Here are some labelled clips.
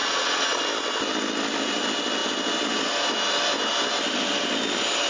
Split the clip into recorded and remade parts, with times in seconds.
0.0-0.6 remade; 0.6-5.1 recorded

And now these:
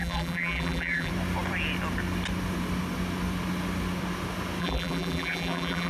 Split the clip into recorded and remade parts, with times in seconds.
0.0-1.1 remade; 1.1-4.6 recorded; 4.6-5.9 remade

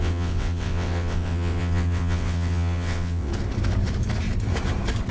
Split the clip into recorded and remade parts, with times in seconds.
0.0-3.3 remade; 3.3-5.1 recorded

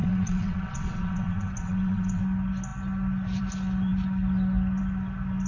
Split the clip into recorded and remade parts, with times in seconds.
0.0-2.2 remade; 2.2-5.5 recorded

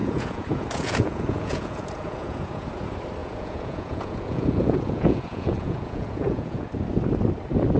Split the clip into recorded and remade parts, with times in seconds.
0.0-2.7 remade; 2.7-3.2 recorded; 3.2-6.7 remade; 6.7-7.8 recorded